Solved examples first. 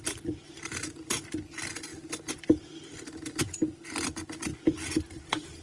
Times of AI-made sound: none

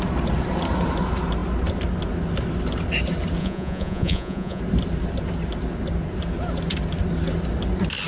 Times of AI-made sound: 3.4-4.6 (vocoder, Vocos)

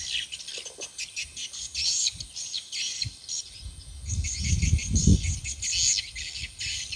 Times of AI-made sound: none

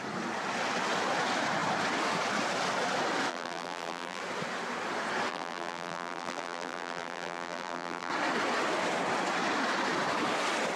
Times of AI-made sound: 3.3-4.2 (vocoder, BigVGAN v2); 5.3-8.1